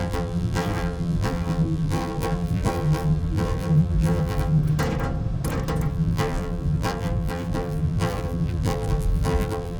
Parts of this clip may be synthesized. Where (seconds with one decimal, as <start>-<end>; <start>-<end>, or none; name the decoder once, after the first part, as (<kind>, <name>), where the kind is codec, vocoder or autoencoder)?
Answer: 0.0-4.6 (vocoder, BigVGAN v2); 5.9-9.8